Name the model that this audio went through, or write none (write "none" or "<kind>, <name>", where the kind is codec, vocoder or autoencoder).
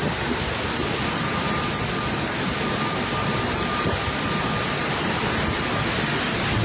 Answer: none